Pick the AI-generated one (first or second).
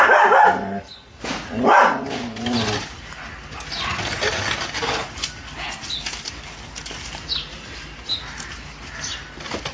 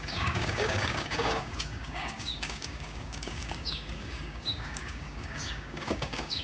second